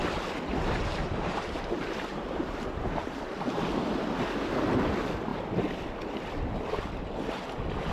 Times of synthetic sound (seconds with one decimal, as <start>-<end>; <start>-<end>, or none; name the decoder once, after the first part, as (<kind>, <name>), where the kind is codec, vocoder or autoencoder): 0.9-3.5 (vocoder, BigVGAN v2)